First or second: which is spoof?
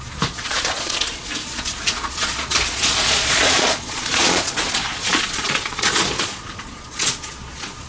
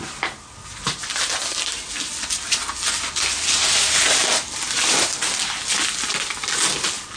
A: first